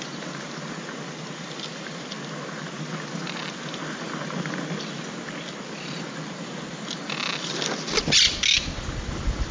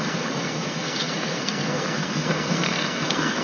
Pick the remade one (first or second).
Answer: second